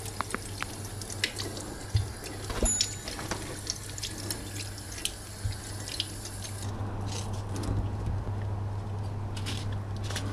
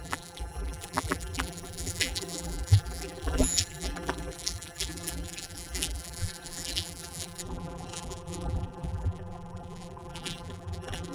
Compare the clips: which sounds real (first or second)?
first